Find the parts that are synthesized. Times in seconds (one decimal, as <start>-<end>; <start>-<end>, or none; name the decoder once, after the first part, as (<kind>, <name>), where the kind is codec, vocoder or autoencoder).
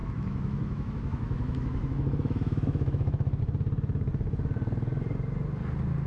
0.0-3.4 (autoencoder, DAC-VAE)